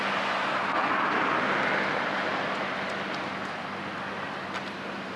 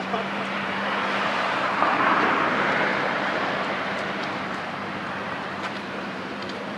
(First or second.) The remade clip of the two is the second